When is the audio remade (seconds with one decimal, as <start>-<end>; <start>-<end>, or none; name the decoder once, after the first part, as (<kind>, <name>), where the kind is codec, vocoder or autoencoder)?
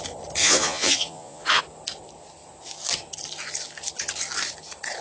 0.4-1.6 (vocoder, Vocos)